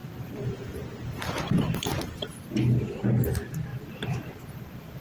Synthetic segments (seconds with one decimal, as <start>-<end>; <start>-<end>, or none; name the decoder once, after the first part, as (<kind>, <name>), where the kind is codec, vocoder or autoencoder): 0.0-2.8 (vocoder, BigVGAN v2); 3.7-5.0